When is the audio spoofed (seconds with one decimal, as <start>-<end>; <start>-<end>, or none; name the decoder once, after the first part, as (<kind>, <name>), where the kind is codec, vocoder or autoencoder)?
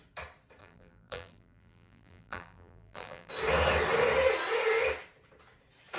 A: 0.6-3.3 (vocoder, BigVGAN v2)